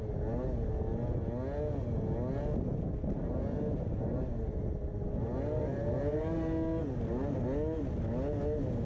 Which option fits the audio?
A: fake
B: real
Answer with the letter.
B